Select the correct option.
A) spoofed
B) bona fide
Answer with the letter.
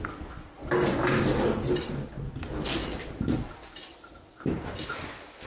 B